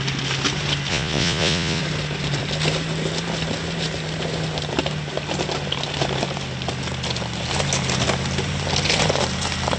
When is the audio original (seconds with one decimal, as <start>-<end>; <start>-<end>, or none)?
0.0-0.9; 1.8-9.8